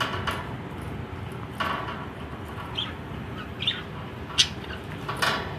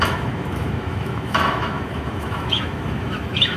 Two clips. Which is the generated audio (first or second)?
second